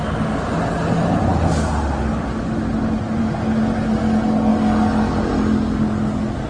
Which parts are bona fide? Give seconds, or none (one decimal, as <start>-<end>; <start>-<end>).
0.0-6.5